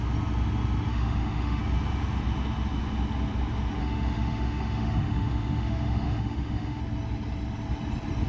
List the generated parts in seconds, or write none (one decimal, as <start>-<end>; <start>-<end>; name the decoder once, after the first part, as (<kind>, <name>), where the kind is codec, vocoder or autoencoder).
0.9-1.6 (autoencoder, DAC-VAE); 3.8-6.8